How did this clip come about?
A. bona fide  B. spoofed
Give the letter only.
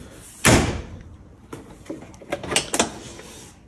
A